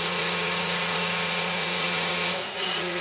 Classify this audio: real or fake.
fake